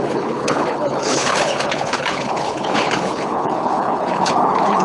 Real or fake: fake